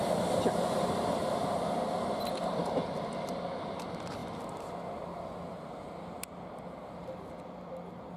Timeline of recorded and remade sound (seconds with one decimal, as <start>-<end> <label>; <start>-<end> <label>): 0.0-8.2 recorded